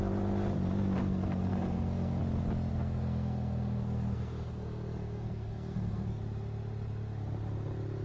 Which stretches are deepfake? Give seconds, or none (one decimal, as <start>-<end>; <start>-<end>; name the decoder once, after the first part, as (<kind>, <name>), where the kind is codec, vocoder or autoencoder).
1.0-2.2 (codec, SNAC); 2.7-6.2